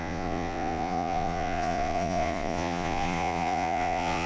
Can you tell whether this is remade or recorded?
remade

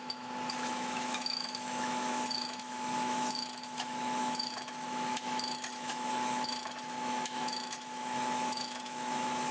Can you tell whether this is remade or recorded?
remade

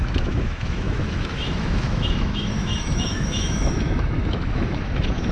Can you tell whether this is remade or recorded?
remade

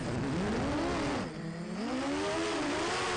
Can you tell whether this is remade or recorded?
recorded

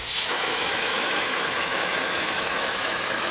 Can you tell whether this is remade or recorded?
remade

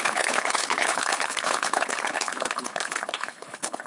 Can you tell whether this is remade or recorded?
remade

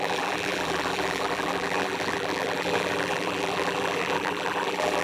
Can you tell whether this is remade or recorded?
remade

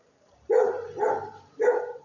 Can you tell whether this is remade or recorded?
remade